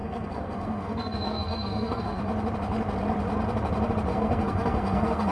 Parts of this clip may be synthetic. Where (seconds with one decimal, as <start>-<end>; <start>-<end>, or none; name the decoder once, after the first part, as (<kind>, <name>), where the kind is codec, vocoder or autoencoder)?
0.0-2.2 (codec, SNAC); 4.1-5.3